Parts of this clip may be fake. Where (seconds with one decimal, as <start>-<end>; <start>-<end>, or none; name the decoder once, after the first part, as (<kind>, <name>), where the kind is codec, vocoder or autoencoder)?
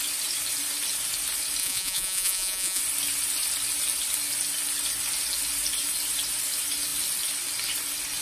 1.6-2.8 (vocoder, Vocos)